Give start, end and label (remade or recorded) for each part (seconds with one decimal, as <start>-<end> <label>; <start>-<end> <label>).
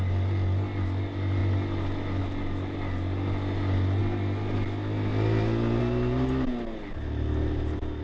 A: 0.0-8.0 recorded